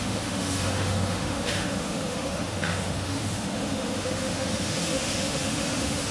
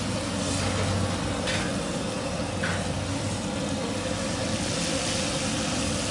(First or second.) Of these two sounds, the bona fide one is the second